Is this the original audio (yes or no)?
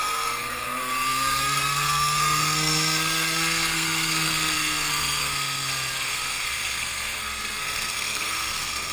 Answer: no